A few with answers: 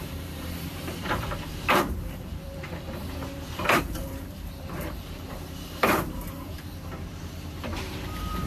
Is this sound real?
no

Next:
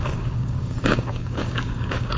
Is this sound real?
no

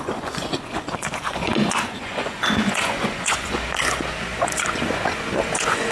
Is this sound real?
no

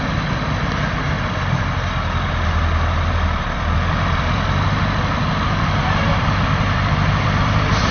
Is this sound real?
no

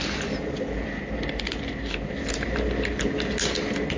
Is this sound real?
yes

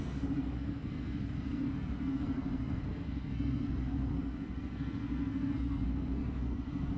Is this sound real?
no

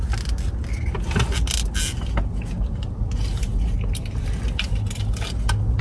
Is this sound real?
yes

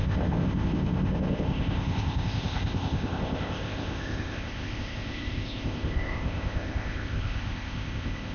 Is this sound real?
no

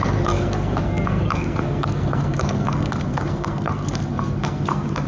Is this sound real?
no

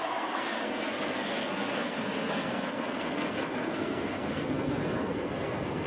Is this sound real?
no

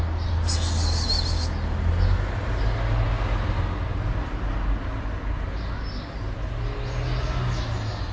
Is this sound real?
yes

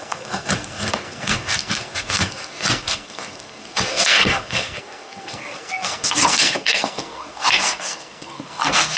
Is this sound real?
no